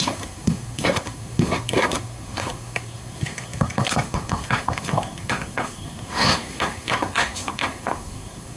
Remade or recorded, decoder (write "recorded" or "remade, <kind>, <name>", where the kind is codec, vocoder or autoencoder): remade, codec, SNAC